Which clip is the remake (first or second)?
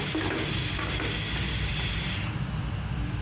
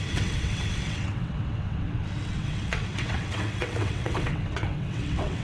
second